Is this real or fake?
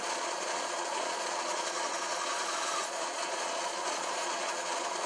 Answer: fake